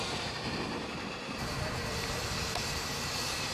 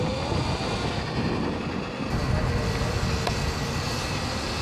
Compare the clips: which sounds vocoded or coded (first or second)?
first